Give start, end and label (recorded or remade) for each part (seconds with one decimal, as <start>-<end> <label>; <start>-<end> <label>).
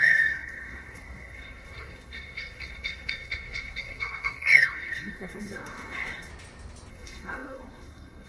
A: 0.0-6.3 remade; 6.3-6.9 recorded; 6.9-8.3 remade